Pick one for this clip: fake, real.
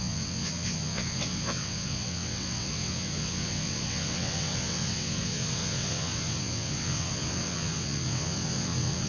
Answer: fake